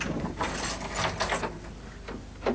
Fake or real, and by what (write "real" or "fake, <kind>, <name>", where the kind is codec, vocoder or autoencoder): real